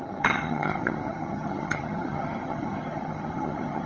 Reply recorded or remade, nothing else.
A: remade